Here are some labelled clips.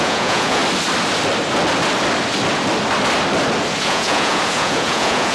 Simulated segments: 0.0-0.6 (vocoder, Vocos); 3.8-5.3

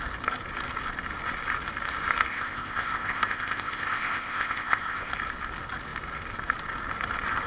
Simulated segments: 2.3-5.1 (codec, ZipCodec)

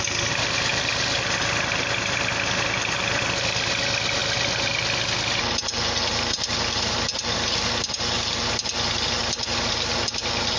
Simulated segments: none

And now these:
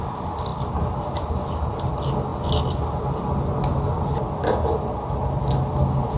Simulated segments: none

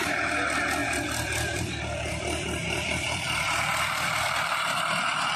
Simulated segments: 0.8-2.1 (vocoder, BigVGAN v2); 2.6-5.4

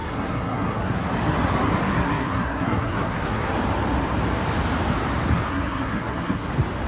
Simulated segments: 0.0-1.1 (codec, SNAC); 1.9-3.5; 5.5-6.5

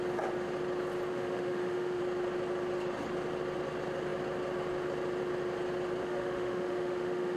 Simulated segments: 1.1-2.0 (autoencoder, DAC-VAE); 6.0-7.4